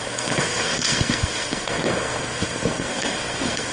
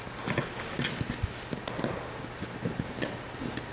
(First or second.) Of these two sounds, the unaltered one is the second